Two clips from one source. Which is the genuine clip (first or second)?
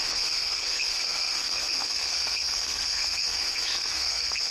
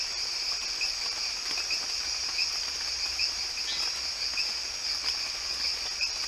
second